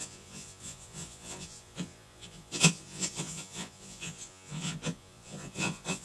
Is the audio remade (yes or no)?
yes